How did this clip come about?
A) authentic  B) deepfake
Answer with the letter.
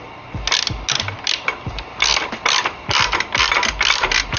A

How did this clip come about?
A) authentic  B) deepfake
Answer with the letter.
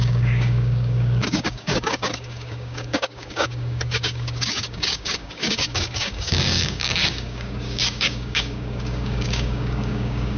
B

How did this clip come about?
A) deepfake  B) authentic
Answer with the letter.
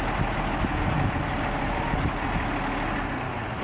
B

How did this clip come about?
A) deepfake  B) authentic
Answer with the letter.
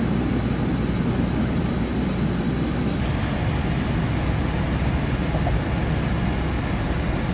B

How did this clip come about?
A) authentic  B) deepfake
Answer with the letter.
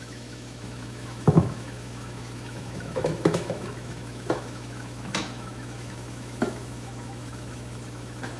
B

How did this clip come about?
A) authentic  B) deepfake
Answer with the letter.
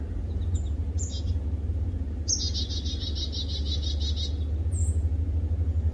A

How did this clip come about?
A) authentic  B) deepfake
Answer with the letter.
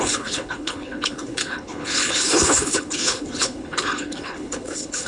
B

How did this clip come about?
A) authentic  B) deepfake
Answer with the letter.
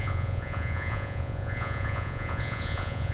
B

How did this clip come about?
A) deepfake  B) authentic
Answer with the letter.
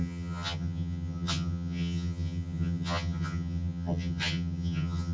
A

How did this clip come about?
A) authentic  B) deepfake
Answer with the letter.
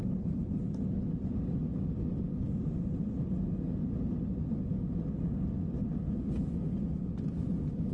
A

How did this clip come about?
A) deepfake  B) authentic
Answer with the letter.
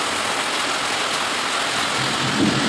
B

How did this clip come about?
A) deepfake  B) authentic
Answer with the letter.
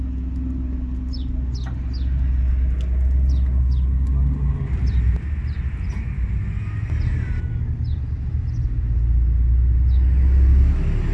B